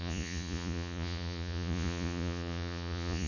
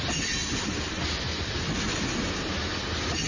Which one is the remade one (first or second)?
first